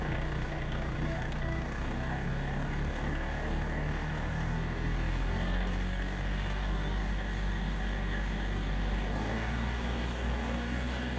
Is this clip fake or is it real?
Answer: fake